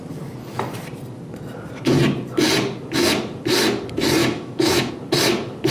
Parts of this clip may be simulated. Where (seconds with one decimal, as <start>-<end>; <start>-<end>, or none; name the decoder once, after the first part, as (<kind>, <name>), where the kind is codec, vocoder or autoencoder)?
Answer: 4.2-4.9 (autoencoder, DAC-VAE)